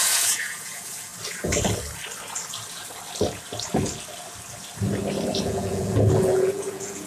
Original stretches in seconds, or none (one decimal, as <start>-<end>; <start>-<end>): 1.1-5.4